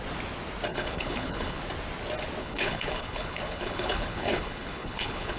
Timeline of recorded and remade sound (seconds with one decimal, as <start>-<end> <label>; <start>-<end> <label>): 0.0-0.7 recorded; 0.7-1.6 remade; 1.6-2.4 recorded; 2.4-5.4 remade